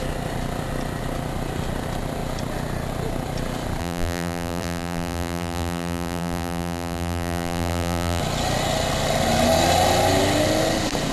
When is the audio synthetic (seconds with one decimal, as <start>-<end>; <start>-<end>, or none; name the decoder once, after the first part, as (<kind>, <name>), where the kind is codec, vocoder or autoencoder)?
3.8-8.2 (vocoder, BigVGAN v2)